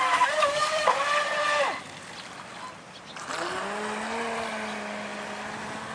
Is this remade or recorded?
recorded